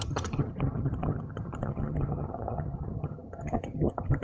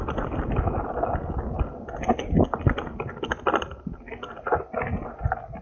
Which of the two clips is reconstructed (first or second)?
first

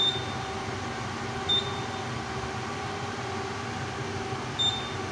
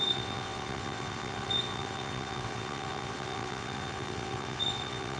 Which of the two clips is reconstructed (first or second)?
second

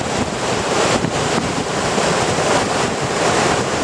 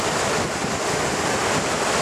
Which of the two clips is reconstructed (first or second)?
first